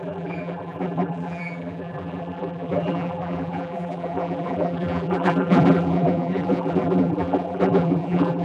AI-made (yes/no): yes